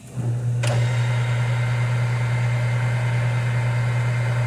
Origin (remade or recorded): recorded